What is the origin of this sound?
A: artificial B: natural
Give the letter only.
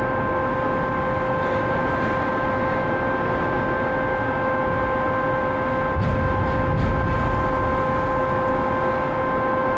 B